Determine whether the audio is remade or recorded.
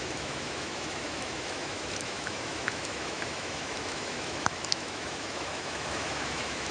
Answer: remade